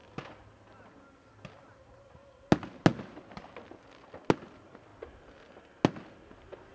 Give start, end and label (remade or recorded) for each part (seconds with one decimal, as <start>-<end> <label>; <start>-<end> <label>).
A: 0.0-2.9 recorded; 2.9-3.8 remade; 3.8-6.7 recorded